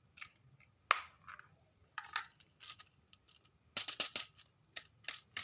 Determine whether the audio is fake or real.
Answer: real